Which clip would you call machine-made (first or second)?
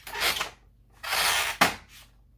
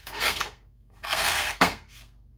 second